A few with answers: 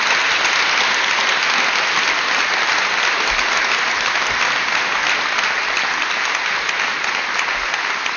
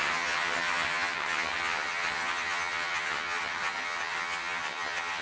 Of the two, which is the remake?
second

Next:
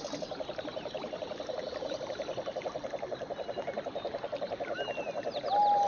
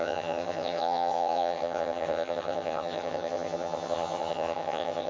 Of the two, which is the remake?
second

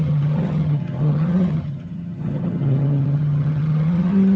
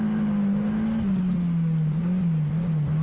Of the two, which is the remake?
first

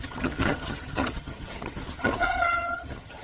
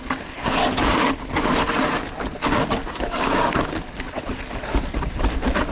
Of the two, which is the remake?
first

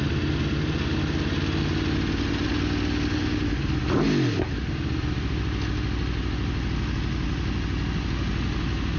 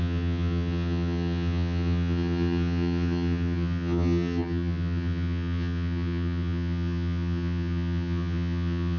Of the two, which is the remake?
second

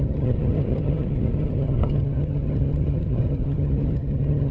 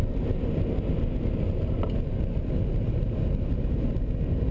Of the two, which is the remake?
first